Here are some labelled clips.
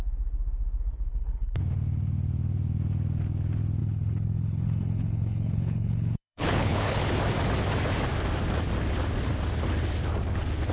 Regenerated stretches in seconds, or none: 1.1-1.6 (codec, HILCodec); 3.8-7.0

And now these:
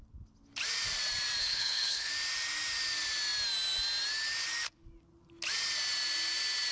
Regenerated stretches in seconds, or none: 1.4-2.1 (codec, HILCodec)

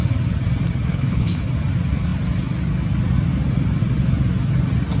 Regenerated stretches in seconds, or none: 0.9-1.4 (codec, HILCodec)

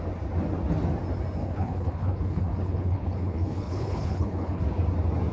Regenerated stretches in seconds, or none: 1.4-4.6 (codec, HILCodec)

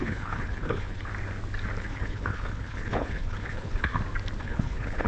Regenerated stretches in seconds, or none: 0.0-1.1 (codec, HILCodec); 1.8-3.9; 4.4-5.1

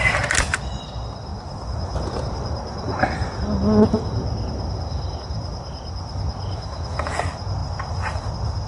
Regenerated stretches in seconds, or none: none

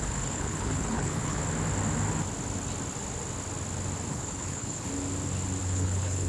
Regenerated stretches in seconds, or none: 0.0-1.4 (codec, HILCodec); 4.1-4.9; 5.6-6.3